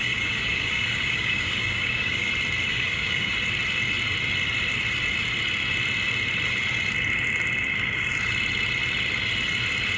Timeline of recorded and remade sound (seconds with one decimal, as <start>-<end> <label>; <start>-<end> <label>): 0.0-2.3 remade; 2.3-2.7 recorded; 2.7-3.3 remade; 3.3-10.0 recorded